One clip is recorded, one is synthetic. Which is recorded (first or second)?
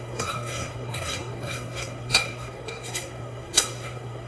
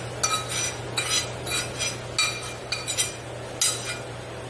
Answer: second